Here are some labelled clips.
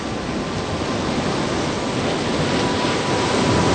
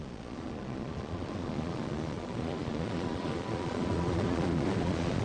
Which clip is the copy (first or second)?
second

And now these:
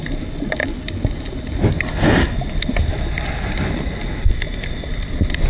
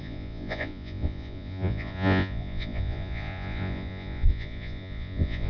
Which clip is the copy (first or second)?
second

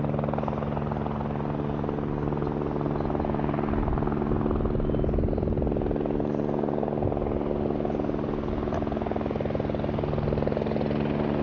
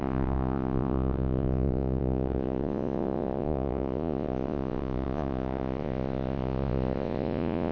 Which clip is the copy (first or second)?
second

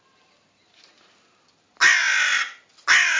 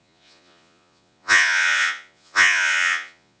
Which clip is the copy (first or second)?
second